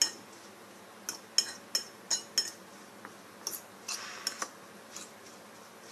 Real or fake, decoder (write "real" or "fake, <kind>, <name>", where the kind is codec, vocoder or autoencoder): real